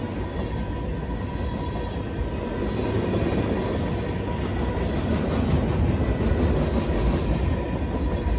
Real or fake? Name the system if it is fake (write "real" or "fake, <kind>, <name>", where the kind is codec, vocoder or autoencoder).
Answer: real